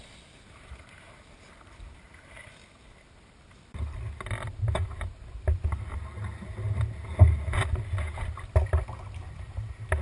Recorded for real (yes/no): yes